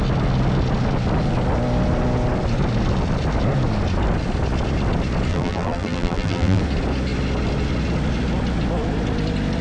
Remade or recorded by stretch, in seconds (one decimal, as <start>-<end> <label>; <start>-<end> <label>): 0.0-5.3 recorded; 5.3-6.6 remade; 6.6-9.6 recorded